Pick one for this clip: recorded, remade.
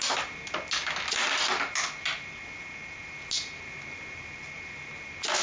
recorded